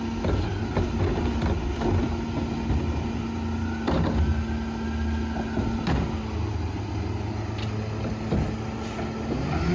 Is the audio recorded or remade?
recorded